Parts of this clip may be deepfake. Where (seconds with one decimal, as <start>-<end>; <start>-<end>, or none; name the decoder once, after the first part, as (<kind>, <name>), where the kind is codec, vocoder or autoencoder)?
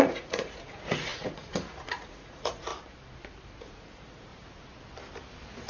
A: 0.0-2.7 (vocoder, Vocos); 3.6-4.3